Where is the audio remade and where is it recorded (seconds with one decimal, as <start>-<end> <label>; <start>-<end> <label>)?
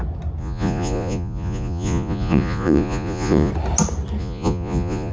0.0-0.4 recorded; 0.4-3.5 remade; 3.5-4.2 recorded; 4.2-5.1 remade